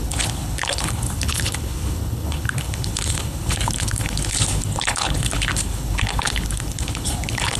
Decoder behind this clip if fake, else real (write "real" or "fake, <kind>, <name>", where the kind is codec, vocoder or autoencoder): fake, codec, HILCodec